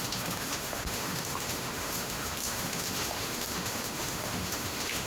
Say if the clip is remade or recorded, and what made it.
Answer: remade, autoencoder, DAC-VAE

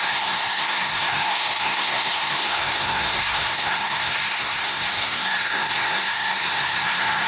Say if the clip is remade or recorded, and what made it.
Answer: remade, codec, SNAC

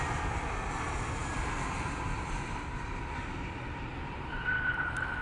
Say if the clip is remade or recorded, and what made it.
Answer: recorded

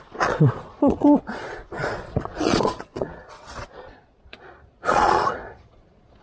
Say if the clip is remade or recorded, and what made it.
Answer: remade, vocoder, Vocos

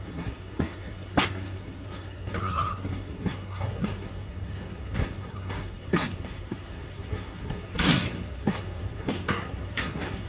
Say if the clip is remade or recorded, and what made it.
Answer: remade, codec, SNAC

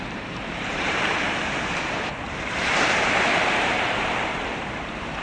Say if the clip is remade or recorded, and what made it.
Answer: remade, vocoder, BigVGAN v2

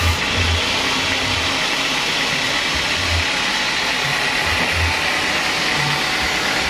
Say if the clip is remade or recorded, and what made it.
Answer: recorded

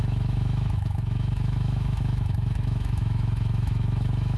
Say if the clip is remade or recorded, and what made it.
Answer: remade, autoencoder, DAC-VAE